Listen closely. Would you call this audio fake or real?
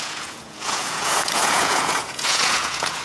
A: fake